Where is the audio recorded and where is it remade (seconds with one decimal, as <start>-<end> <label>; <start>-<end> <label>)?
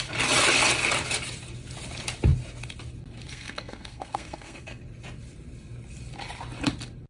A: 0.0-3.3 recorded; 3.3-4.8 remade; 4.8-7.1 recorded